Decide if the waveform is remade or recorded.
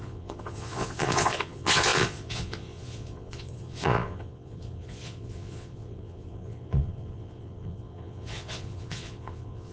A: remade